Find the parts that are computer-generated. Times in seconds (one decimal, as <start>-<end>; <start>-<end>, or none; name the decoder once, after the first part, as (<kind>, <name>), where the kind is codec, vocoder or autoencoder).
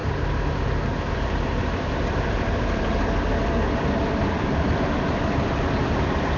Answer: 1.1-2.9 (vocoder, BigVGAN v2); 3.4-6.4